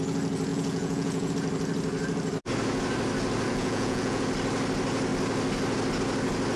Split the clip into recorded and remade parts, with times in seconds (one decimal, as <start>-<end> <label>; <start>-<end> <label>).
0.0-0.5 recorded; 0.5-1.3 remade; 1.3-3.5 recorded; 3.5-4.2 remade; 4.2-6.6 recorded